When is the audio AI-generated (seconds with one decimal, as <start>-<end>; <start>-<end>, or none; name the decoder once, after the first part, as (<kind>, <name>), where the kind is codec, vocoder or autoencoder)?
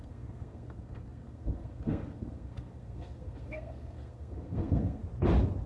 0.0-5.0 (codec, SNAC)